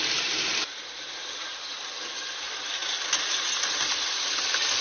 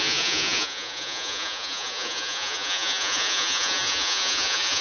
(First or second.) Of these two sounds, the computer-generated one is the second